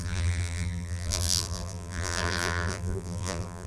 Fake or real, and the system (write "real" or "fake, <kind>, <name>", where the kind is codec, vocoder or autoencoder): fake, vocoder, BigVGAN v2